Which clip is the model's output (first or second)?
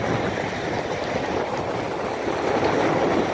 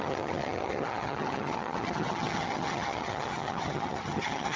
second